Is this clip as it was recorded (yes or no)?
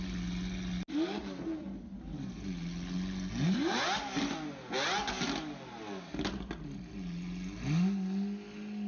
yes